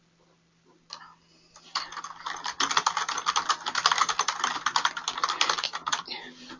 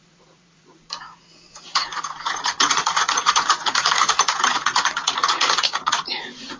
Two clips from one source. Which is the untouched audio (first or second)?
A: first